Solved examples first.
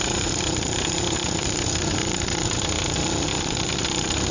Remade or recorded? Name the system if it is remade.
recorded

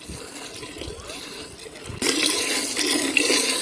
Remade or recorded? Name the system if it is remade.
recorded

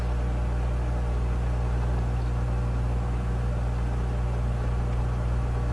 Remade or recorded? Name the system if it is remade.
recorded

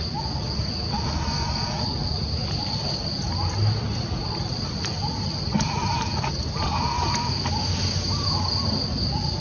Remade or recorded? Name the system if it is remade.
recorded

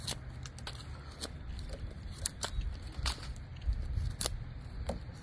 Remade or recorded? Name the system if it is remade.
recorded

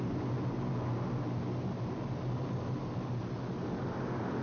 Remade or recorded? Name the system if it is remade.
recorded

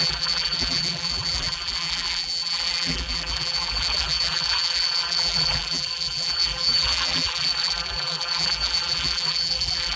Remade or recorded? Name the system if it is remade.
remade, vocoder, BigVGAN v2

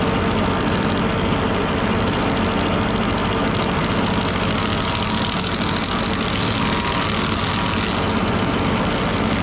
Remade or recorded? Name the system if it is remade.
recorded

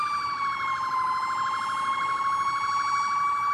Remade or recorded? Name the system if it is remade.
recorded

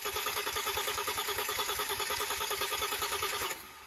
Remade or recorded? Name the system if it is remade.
remade, codec, DAC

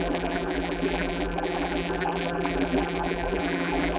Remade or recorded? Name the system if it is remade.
remade, vocoder, BigVGAN v2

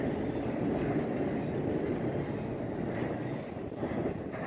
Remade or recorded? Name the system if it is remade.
recorded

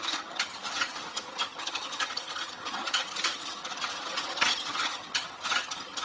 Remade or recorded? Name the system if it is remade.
remade, vocoder, HiFi-GAN